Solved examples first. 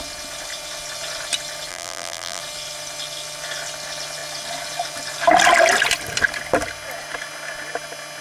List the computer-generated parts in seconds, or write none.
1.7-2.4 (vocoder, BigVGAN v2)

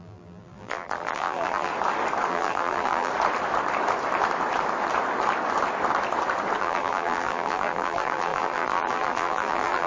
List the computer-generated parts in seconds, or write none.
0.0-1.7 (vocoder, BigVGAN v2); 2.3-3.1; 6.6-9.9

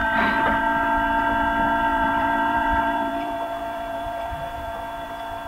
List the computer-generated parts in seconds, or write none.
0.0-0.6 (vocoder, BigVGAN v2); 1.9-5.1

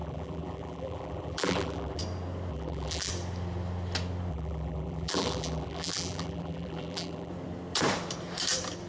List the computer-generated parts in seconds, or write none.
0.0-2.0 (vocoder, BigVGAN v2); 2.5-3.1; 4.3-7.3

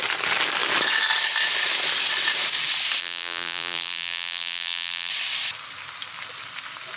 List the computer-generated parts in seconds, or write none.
3.0-5.1 (vocoder, BigVGAN v2)

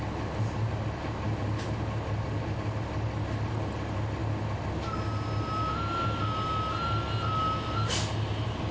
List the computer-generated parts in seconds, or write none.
none